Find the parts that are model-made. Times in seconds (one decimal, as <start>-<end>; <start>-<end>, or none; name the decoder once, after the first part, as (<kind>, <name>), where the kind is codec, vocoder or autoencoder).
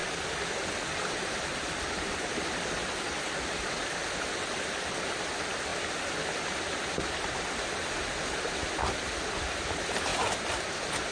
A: none